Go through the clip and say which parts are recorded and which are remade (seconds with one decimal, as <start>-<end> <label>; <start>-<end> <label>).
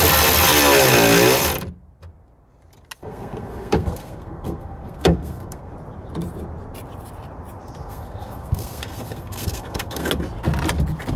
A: 0.0-3.0 recorded; 3.0-5.7 remade; 5.7-7.8 recorded; 7.8-10.1 remade; 10.1-11.2 recorded